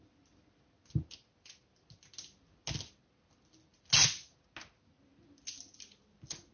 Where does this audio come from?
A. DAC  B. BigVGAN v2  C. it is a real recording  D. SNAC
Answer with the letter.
C